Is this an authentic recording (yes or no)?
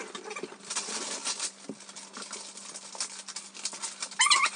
yes